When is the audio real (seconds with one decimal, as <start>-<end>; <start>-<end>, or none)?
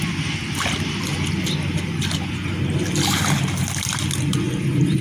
0.0-5.0